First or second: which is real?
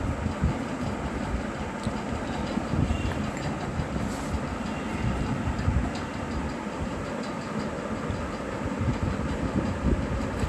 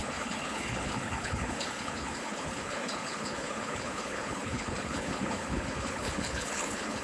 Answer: first